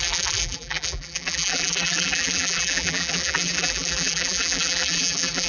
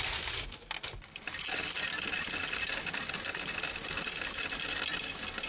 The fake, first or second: first